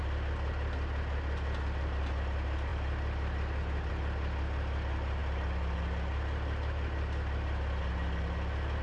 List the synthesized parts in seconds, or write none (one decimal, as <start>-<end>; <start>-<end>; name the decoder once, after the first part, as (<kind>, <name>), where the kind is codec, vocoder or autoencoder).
none